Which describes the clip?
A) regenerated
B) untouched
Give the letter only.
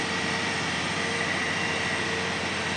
A